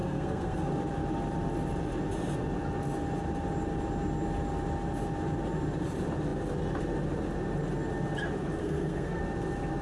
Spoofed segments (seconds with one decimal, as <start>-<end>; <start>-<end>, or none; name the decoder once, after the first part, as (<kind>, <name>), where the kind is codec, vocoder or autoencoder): 0.0-0.7 (codec, SNAC); 8.6-9.2